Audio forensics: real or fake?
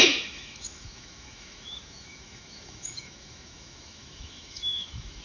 fake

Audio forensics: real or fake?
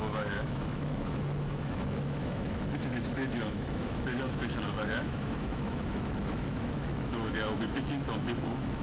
fake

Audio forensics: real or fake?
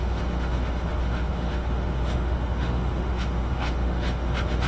fake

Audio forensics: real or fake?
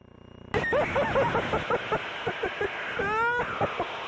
real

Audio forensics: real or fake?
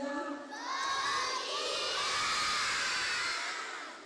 real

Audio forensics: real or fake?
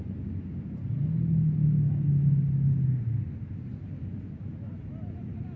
real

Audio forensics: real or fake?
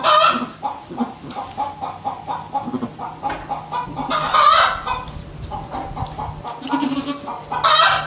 real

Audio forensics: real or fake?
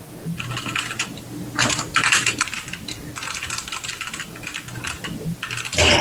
real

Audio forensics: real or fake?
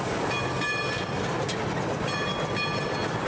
real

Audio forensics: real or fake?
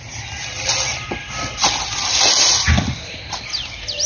real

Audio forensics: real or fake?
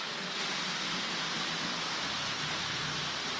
real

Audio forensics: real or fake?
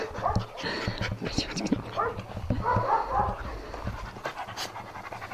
real